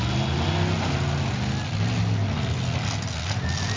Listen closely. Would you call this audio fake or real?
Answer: real